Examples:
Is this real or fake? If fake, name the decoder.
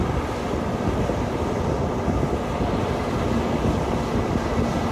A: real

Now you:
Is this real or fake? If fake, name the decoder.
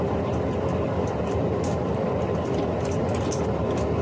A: real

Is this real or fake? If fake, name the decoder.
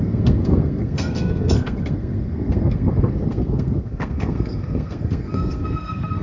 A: fake, codec, SNAC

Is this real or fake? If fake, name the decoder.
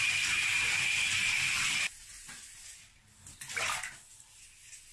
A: real